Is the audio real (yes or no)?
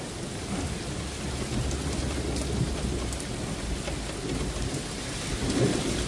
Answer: yes